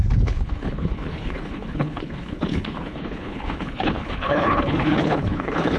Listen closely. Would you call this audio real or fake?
fake